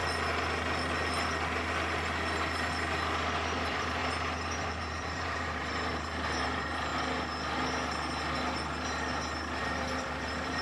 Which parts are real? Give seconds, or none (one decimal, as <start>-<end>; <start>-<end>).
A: 0.0-3.6; 4.0-4.5; 6.9-9.6